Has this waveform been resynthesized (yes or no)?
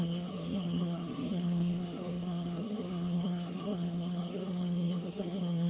yes